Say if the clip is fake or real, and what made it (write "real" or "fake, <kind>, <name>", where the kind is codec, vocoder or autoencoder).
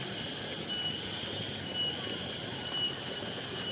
real